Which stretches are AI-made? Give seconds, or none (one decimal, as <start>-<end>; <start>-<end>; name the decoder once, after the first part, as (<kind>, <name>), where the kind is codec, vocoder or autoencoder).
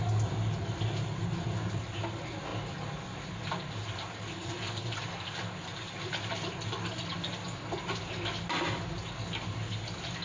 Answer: none